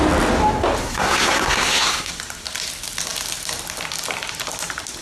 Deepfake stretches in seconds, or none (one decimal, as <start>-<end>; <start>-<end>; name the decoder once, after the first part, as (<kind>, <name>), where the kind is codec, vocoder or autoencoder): 0.8-2.1 (codec, SNAC)